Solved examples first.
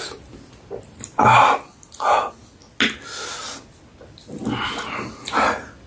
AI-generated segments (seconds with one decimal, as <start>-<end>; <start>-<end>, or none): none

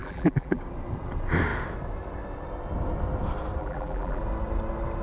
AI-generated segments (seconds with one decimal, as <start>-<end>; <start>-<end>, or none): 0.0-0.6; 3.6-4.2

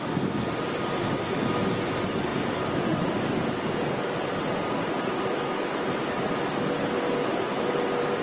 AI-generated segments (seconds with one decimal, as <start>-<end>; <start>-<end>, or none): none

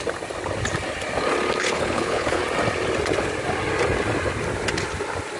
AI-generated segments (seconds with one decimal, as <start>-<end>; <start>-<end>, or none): 1.6-2.4

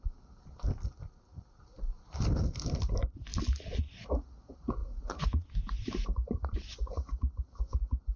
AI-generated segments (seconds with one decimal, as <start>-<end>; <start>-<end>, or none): none

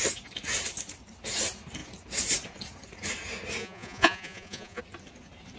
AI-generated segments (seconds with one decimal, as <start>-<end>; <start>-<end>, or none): 3.6-4.8

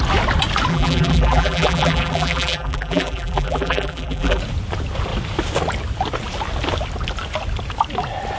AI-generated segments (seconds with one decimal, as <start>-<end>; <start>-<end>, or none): 0.7-4.4

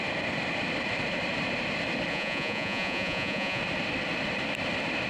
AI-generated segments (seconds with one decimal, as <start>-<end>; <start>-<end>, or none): 2.1-3.6